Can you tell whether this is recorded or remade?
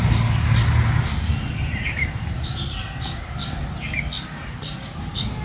recorded